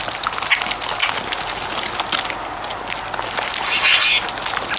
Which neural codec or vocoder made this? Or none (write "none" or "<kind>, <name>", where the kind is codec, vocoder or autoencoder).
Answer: none